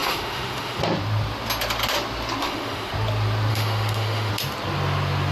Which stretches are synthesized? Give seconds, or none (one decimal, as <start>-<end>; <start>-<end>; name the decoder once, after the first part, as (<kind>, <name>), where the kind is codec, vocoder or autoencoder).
0.0-0.8 (autoencoder, DAC-VAE); 2.4-2.9; 3.5-4.3